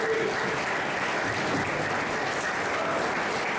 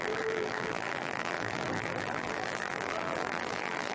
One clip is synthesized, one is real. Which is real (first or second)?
first